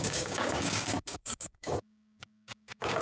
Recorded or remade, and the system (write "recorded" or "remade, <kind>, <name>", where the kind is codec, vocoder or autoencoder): remade, codec, DAC